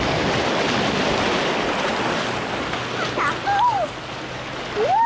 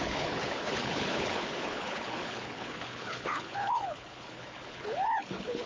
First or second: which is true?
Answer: first